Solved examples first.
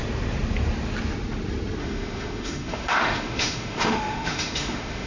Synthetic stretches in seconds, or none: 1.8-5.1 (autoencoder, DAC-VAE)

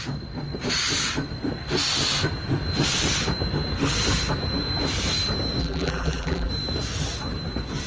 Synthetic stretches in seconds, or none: 5.6-6.5 (vocoder, BigVGAN v2)